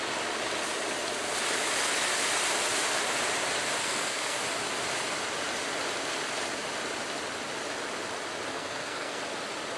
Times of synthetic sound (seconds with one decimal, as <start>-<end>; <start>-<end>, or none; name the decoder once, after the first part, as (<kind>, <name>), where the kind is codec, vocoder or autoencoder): 3.8-4.4 (codec, SNAC); 8.5-9.2